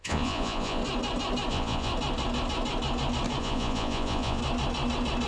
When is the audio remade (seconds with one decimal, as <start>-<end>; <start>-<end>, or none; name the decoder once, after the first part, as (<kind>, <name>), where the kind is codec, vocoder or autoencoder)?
0.0-0.8 (vocoder, Vocos); 1.5-1.9; 3.4-4.4